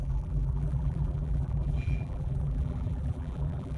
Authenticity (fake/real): fake